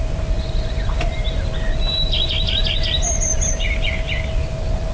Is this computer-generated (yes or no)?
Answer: no